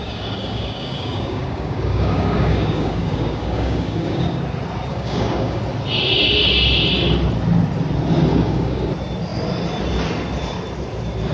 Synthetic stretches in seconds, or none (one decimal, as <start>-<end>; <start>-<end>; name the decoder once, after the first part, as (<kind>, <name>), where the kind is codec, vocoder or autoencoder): 0.0-4.4 (codec, DAC); 4.9-5.6; 8.3-8.9